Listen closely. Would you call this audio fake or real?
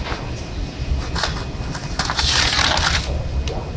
real